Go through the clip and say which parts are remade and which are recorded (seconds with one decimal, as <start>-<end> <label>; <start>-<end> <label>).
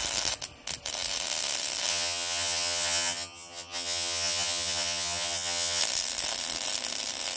0.0-1.9 recorded; 1.9-5.8 remade; 5.8-7.4 recorded